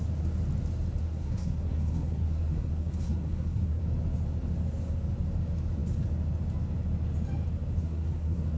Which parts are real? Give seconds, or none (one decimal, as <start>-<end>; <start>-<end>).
0.0-1.0; 3.8-7.8